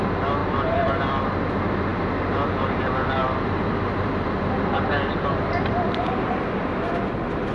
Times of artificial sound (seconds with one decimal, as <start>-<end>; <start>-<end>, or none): 0.4-1.0; 3.2-7.5